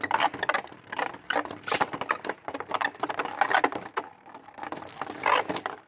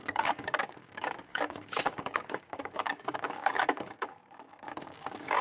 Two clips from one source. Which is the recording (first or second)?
first